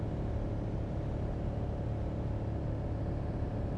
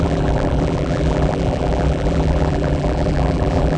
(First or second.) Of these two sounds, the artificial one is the second